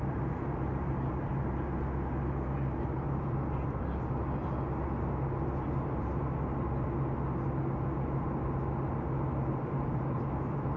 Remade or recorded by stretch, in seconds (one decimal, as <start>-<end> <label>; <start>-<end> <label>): 0.0-1.3 remade; 1.3-2.8 recorded; 2.8-4.4 remade; 4.4-9.5 recorded; 9.5-10.8 remade